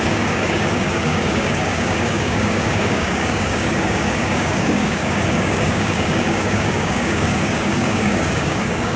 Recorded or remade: remade